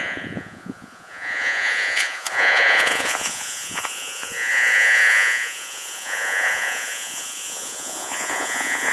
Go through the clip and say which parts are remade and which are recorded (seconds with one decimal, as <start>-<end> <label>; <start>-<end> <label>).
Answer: 0.0-8.9 remade